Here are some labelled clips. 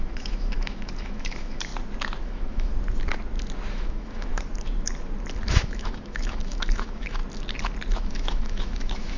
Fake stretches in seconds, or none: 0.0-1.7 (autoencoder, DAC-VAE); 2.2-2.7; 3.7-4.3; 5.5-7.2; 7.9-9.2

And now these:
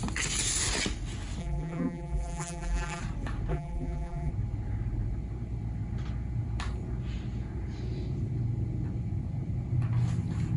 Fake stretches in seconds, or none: 1.4-3.0 (vocoder, BigVGAN v2); 3.5-4.3

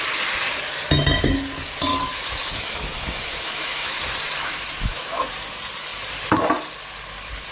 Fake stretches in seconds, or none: 1.9-4.0 (autoencoder, DAC-VAE); 4.4-5.3